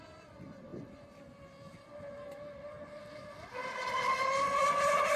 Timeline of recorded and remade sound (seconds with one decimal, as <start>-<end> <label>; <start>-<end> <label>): 0.0-5.2 recorded